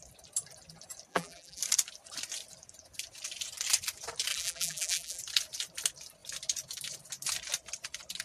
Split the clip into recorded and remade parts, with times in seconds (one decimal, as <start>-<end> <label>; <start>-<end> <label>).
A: 0.0-1.1 recorded; 1.1-1.6 remade; 1.6-4.3 recorded; 4.3-5.2 remade; 5.2-8.2 recorded